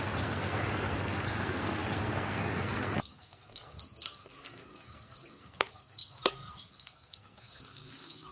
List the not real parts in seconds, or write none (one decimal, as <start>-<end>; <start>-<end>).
0.0-8.3